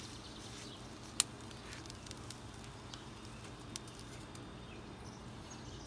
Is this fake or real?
real